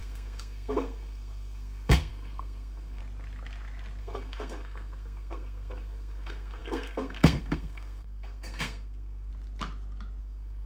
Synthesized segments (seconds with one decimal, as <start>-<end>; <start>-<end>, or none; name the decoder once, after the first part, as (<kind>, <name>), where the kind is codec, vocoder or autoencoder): 0.0-3.0 (codec, SNAC); 4.0-9.3; 10.2-10.7